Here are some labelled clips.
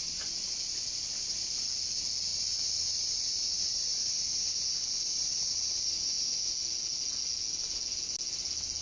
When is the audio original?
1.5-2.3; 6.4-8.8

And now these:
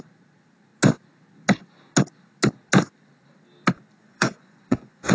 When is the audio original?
0.0-4.0

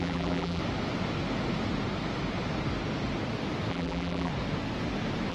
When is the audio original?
0.6-3.7; 4.3-5.3

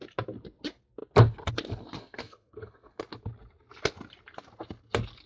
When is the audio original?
0.0-2.0; 3.0-5.3